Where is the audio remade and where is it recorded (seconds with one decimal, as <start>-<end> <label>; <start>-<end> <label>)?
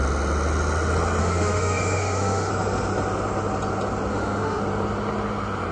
0.0-1.2 recorded; 1.2-2.5 remade; 2.5-4.1 recorded; 4.1-4.6 remade; 4.6-5.7 recorded